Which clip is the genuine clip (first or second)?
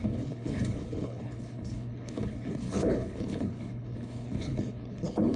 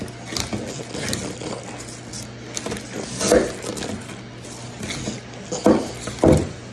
second